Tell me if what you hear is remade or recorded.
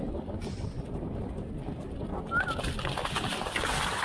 recorded